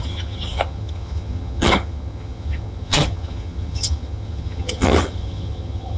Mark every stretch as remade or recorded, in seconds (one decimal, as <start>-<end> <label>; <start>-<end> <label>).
0.0-6.0 remade